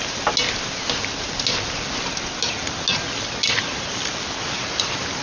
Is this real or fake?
real